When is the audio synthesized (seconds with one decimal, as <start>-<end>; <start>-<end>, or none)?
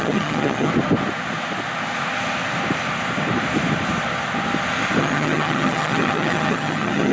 0.0-0.7; 5.0-7.1